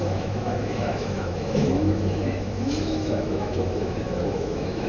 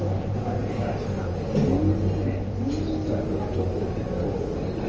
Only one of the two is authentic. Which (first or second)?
second